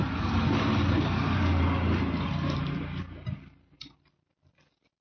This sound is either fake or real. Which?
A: fake